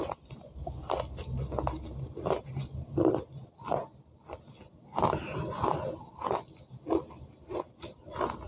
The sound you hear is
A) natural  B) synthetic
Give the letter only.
A